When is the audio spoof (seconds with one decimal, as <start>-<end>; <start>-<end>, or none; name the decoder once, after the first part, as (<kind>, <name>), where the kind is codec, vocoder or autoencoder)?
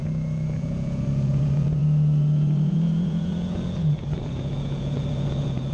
0.0-5.7 (vocoder, Vocos)